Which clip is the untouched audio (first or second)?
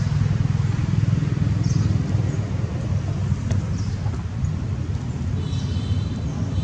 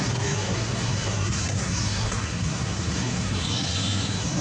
first